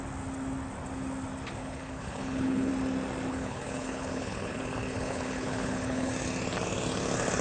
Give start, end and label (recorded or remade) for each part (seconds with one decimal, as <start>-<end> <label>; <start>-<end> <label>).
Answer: 0.0-1.6 recorded; 1.6-2.7 remade; 2.7-3.3 recorded; 3.3-6.1 remade; 6.1-7.4 recorded